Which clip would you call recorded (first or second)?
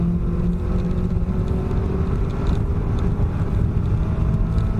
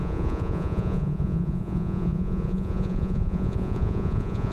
first